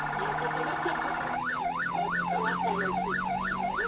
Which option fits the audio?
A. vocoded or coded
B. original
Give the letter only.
A